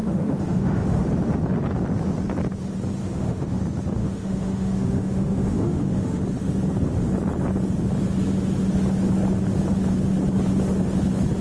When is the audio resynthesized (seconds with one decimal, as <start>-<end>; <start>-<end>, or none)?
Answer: 0.0-1.0; 3.0-3.6; 4.0-6.2